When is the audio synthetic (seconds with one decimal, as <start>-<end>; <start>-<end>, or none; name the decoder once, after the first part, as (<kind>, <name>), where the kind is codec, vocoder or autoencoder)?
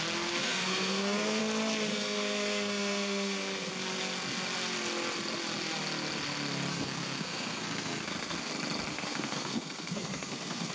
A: 0.4-1.4 (codec, SNAC); 1.9-3.7; 6.7-8.5; 8.9-10.7